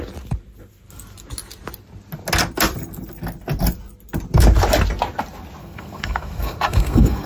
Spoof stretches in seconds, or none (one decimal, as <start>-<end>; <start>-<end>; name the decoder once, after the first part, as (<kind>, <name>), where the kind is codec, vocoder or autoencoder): 5.6-7.3 (codec, SNAC)